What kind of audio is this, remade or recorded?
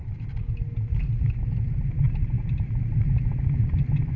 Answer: recorded